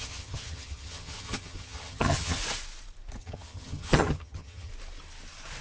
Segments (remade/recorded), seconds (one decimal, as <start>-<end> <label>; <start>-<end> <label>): 0.0-2.4 remade; 2.4-3.2 recorded; 3.2-4.7 remade; 4.7-5.6 recorded